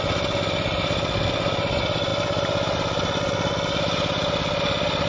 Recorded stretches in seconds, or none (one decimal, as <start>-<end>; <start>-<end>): 0.0-5.1